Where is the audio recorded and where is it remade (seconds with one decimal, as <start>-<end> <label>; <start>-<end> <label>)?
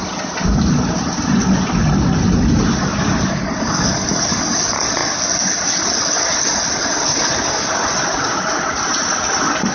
0.0-9.7 recorded